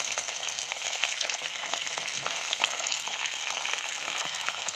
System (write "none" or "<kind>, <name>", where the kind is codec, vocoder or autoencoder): codec, SNAC